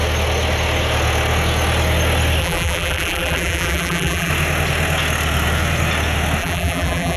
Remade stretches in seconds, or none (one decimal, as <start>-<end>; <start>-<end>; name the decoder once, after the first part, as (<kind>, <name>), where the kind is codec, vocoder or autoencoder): 2.4-4.3 (vocoder, BigVGAN v2); 6.4-7.2